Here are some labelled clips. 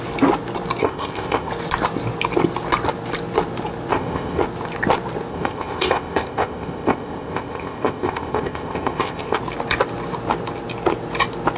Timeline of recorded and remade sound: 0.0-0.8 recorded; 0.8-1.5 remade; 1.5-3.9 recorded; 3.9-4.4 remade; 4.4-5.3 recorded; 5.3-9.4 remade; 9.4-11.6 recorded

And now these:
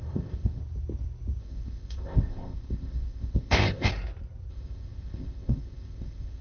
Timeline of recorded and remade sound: 0.0-0.6 remade; 0.6-1.4 recorded; 1.4-3.9 remade; 3.9-4.5 recorded; 4.5-6.4 remade